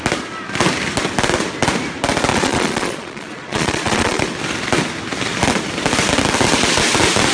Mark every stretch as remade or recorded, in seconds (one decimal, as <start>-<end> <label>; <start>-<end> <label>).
0.0-2.3 recorded; 2.3-4.2 remade; 4.2-7.3 recorded